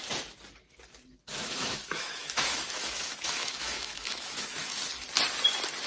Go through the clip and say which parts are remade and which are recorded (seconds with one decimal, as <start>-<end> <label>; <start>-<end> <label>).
0.0-1.3 recorded; 1.3-4.8 remade; 4.8-5.9 recorded